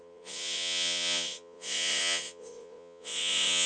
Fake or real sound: fake